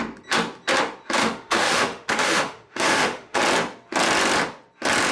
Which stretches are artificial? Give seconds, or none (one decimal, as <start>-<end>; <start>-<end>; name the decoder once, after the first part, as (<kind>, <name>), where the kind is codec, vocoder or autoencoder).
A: 1.2-3.4 (autoencoder, DAC-VAE)